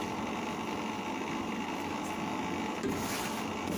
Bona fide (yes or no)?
yes